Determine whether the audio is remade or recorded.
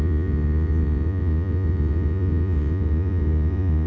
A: remade